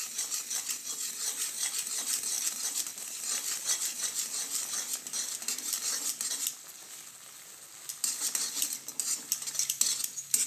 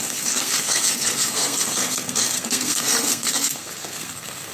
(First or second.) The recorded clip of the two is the first